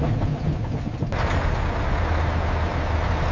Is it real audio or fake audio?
real